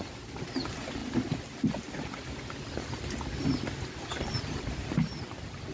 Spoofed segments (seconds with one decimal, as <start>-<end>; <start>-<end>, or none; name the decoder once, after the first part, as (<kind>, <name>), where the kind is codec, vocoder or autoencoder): none